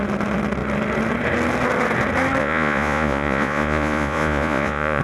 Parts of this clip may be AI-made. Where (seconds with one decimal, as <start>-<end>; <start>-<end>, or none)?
2.4-5.0